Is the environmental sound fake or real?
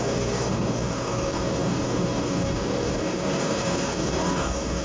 fake